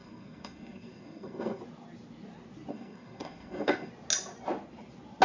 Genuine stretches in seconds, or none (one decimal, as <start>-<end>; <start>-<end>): 1.6-2.7; 3.9-5.2